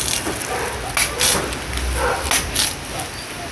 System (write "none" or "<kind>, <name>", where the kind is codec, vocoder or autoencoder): none